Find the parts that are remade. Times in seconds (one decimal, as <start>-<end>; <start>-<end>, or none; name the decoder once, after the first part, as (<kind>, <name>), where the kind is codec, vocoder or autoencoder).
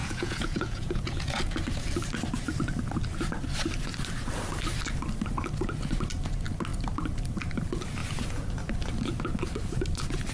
0.0-1.4 (vocoder, Vocos)